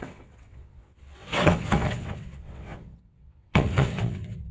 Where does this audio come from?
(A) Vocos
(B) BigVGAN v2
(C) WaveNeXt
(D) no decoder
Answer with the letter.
C